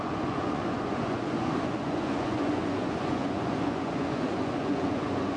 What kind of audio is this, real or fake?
fake